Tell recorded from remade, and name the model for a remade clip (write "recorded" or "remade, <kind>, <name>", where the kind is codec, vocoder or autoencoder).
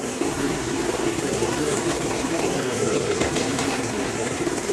remade, codec, SNAC